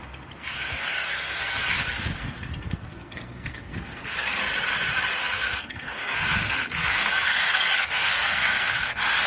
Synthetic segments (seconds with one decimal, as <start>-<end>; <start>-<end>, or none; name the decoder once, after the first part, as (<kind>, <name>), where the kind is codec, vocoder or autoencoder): 0.0-4.4 (codec, SNAC); 5.2-9.3